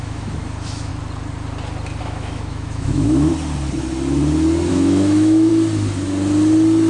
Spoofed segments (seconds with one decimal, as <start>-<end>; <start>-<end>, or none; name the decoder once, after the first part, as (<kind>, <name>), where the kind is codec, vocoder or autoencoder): 0.0-0.9 (autoencoder, DAC-VAE); 2.0-3.3; 4.7-5.5